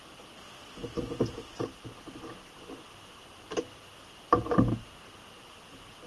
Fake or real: real